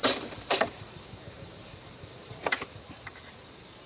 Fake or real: fake